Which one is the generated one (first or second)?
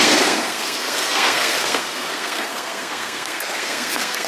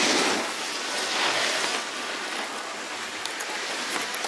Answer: first